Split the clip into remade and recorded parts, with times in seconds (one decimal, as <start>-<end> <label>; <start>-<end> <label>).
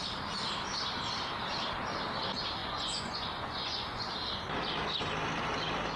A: 0.0-2.6 recorded; 2.6-4.1 remade; 4.1-6.0 recorded